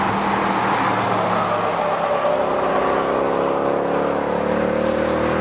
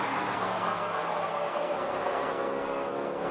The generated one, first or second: second